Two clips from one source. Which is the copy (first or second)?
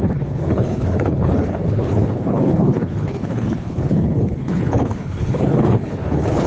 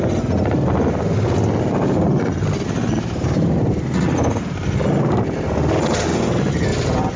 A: first